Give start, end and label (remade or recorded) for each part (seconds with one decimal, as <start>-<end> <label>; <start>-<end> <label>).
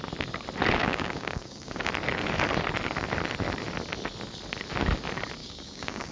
0.0-0.8 recorded; 0.8-1.9 remade; 1.9-5.4 recorded; 5.4-6.1 remade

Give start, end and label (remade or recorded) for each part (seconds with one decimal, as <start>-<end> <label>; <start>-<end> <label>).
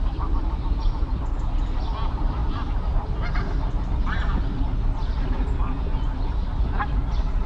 0.0-7.5 recorded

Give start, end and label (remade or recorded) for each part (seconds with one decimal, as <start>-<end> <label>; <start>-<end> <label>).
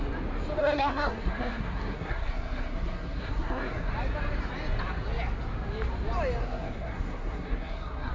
0.0-0.6 recorded; 0.6-3.9 remade; 3.9-6.4 recorded; 6.4-8.1 remade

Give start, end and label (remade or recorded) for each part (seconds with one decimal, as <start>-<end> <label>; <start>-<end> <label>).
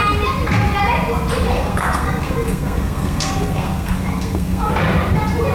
0.0-1.5 recorded; 1.5-4.7 remade; 4.7-5.5 recorded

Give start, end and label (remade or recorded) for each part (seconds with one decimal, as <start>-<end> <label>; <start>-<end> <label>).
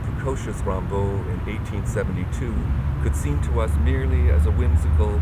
0.0-5.2 recorded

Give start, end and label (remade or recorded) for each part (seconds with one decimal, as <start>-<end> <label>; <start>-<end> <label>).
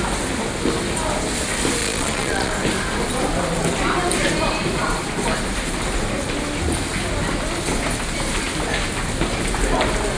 0.0-1.8 recorded; 1.8-2.5 remade; 2.5-10.2 recorded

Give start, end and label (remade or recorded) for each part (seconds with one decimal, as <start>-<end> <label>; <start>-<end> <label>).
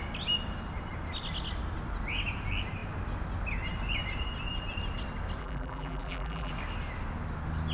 0.0-5.4 recorded; 5.4-6.5 remade; 6.5-7.7 recorded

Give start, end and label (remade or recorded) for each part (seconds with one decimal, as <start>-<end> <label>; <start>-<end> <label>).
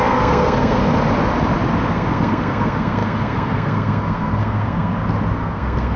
0.0-0.8 remade; 0.8-1.9 recorded; 1.9-4.9 remade; 4.9-5.4 recorded; 5.4-6.0 remade